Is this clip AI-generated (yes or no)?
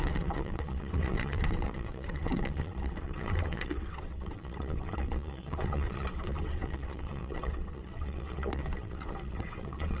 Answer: yes